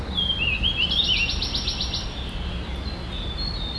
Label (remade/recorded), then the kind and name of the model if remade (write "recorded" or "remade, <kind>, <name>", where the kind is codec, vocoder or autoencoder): recorded